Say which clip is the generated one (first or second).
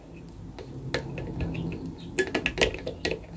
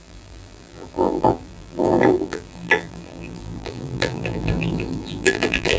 second